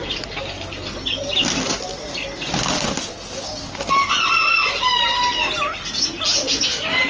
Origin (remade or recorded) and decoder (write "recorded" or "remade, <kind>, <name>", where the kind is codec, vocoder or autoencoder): recorded